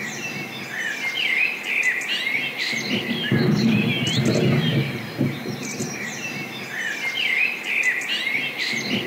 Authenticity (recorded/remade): recorded